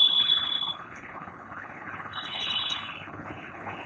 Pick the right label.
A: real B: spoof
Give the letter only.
B